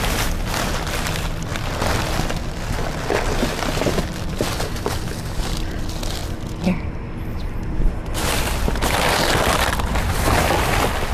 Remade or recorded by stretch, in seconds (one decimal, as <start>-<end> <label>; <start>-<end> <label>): 0.0-11.1 recorded